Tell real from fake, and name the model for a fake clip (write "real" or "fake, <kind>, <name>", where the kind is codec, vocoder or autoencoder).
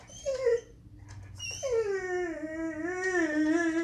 real